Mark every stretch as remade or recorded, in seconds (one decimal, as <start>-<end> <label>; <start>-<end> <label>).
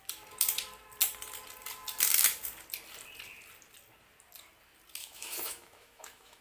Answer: 0.0-5.0 recorded; 5.0-6.4 remade